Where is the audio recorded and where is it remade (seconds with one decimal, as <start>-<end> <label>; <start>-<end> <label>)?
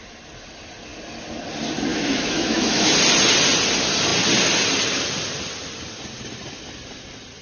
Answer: 0.0-1.9 recorded; 1.9-2.9 remade; 2.9-7.4 recorded